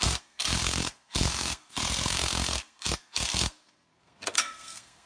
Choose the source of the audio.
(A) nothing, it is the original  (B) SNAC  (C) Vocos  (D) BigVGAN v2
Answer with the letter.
B